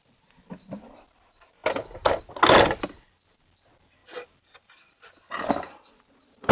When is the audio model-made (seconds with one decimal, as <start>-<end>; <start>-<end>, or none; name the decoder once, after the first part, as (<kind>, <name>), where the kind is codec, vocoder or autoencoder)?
1.6-2.2 (vocoder, BigVGAN v2); 4.0-5.7